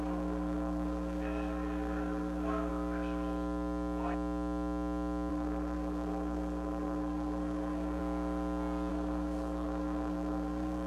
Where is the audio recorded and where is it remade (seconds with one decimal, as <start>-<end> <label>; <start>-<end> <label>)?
0.0-2.7 remade; 2.7-5.3 recorded; 5.3-8.0 remade; 8.0-8.9 recorded; 8.9-10.9 remade